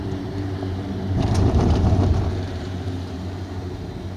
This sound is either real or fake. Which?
fake